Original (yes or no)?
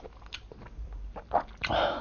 yes